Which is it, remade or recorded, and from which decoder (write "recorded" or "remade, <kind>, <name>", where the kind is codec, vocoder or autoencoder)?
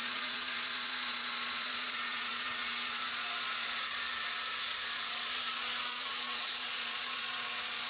remade, vocoder, Vocos